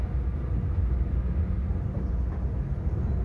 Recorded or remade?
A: recorded